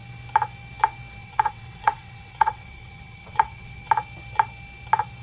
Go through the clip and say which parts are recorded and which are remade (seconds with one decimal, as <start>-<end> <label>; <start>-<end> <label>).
0.0-1.2 recorded; 1.2-3.9 remade; 3.9-5.2 recorded